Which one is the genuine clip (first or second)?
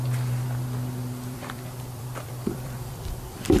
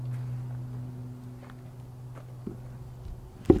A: second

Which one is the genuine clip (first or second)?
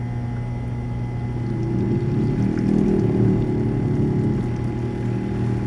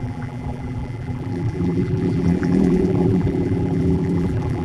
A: first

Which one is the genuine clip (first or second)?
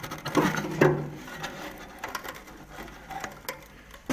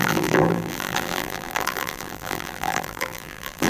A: first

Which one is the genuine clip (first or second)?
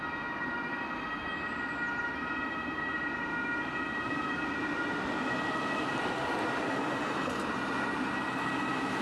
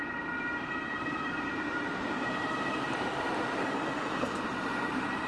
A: first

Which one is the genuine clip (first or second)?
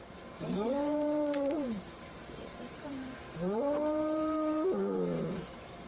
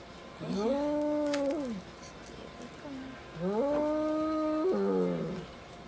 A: second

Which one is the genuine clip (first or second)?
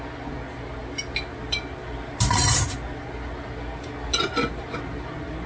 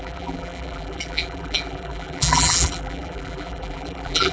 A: first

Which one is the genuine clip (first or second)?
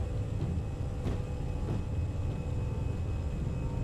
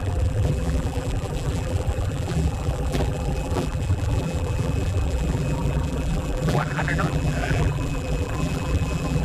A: first